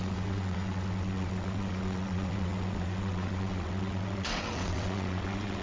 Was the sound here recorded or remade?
remade